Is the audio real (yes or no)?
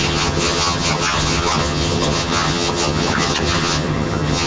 no